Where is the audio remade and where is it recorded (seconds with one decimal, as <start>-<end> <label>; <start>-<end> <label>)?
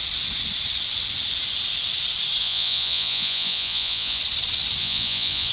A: 0.0-2.4 recorded; 2.4-4.2 remade; 4.2-4.8 recorded; 4.8-5.5 remade